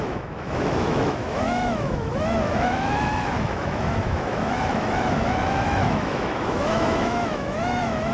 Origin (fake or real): fake